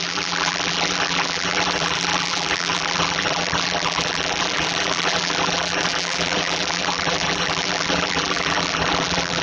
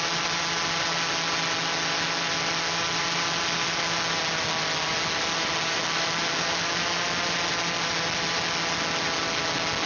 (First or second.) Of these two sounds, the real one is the second